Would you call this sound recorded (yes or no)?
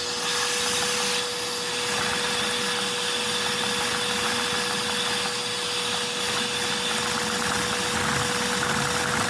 yes